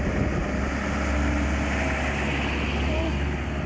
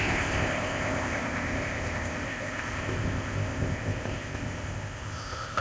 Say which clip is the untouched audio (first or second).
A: first